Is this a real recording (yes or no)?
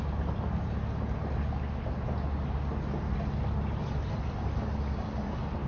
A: yes